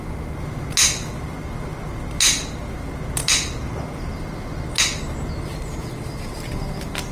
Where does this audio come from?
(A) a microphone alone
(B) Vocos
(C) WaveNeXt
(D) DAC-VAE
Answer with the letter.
A